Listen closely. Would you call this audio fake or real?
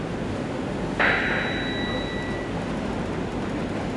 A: real